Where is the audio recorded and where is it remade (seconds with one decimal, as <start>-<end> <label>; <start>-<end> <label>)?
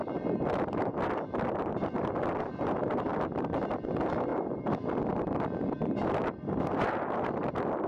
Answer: 0.0-7.9 recorded